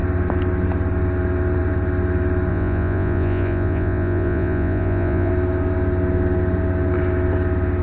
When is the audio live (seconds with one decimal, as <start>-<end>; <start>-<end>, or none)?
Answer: 0.0-2.5; 5.3-7.8